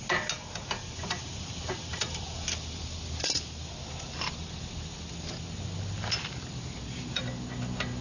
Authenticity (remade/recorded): recorded